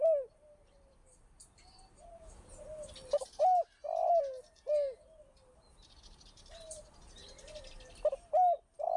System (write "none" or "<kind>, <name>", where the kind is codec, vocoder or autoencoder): vocoder, BigVGAN v2